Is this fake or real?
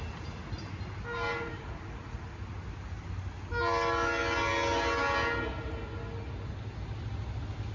real